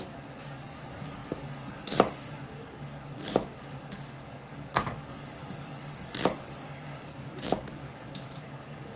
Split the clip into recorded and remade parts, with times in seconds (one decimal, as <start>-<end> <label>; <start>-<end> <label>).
0.0-9.0 remade